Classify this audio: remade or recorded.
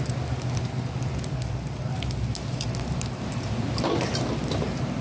recorded